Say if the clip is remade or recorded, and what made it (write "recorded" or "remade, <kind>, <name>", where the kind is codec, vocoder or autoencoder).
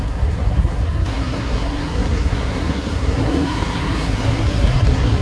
remade, codec, SNAC